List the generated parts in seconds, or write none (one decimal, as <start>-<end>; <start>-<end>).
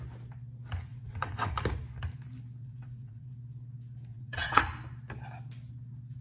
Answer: 0.9-1.5; 2.6-3.3; 4.1-4.6